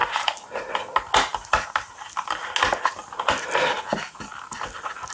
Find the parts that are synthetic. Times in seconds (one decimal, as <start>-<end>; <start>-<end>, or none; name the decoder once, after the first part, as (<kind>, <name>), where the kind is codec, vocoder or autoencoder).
0.0-0.7 (vocoder, BigVGAN v2)

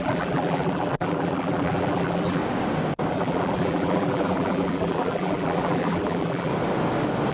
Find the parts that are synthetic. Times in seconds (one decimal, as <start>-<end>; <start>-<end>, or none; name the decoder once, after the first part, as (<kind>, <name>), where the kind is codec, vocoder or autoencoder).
0.0-2.4 (vocoder, BigVGAN v2); 3.1-6.5

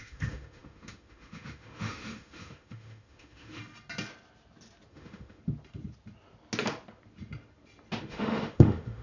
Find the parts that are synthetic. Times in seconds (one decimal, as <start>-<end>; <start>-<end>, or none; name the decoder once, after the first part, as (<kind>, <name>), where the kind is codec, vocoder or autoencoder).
0.0-3.6 (autoencoder, DAC-VAE); 4.9-5.4; 8.0-9.0

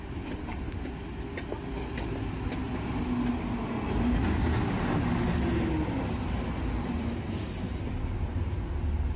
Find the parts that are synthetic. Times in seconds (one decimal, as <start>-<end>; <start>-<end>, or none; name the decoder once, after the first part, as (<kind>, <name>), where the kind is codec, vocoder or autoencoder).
none

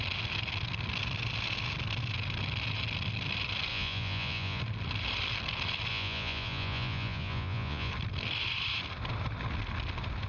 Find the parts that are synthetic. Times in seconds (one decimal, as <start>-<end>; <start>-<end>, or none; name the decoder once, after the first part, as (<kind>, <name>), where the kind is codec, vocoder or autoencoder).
3.7-4.6 (vocoder, Vocos); 5.9-7.9

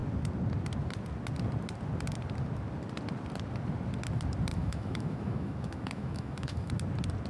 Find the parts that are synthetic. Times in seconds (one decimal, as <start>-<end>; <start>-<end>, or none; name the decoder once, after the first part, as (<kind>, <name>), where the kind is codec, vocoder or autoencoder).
4.5-6.7 (autoencoder, DAC-VAE)

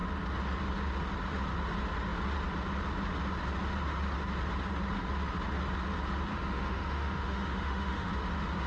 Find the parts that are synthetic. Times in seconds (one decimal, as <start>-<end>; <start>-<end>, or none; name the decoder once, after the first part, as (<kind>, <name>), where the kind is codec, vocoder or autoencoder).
6.3-8.1 (autoencoder, DAC-VAE)